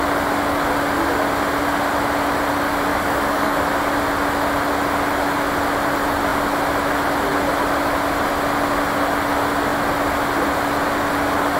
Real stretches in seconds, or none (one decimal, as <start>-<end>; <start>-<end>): 0.0-2.9; 3.6-11.6